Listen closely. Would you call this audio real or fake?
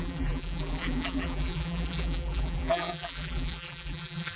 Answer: fake